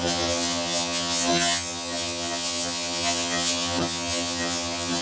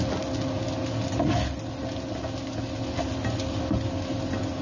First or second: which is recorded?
second